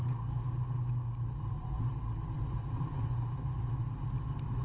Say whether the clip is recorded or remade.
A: recorded